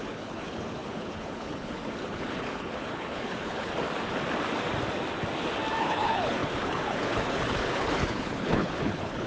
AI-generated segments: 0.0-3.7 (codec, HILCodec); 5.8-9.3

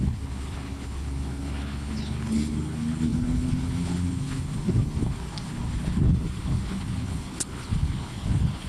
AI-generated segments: 0.0-8.7 (codec, HILCodec)

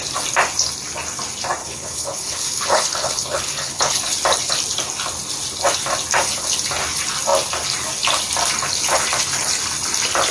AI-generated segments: 1.6-4.0 (codec, HILCodec)

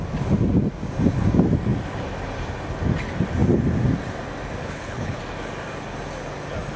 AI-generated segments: 4.6-5.2 (codec, HILCodec)